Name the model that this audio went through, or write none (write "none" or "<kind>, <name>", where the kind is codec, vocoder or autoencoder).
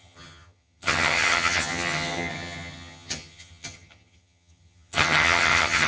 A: vocoder, HiFi-GAN